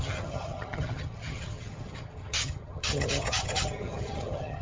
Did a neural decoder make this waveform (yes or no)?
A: yes